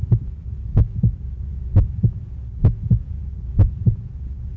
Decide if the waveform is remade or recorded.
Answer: remade